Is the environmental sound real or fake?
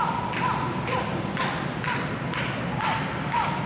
real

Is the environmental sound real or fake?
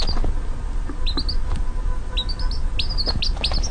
real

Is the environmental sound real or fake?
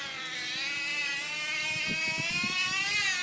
real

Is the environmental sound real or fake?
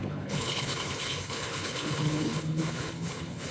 fake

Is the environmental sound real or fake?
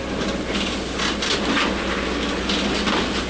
real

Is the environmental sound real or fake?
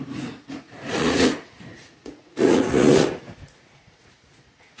fake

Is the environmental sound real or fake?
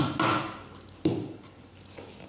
real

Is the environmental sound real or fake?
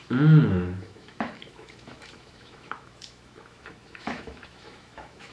fake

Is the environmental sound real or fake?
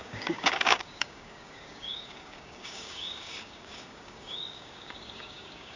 fake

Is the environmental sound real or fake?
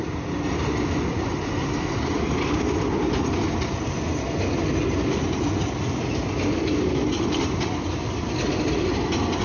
real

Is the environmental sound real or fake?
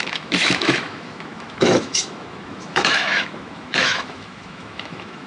fake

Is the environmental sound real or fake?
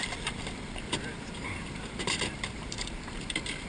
fake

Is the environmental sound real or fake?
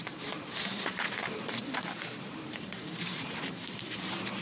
fake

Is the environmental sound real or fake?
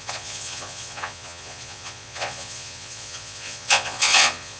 fake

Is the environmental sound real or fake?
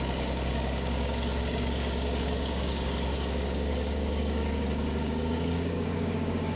fake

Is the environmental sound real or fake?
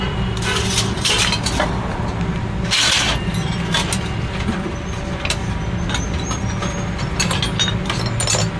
real